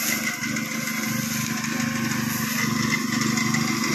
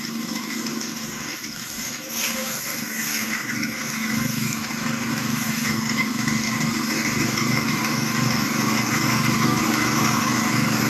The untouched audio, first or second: first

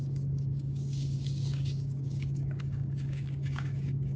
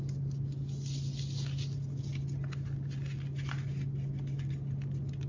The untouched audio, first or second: second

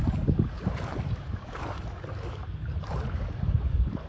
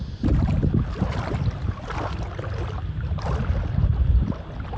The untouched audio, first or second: second